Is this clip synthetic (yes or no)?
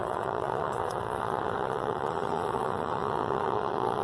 yes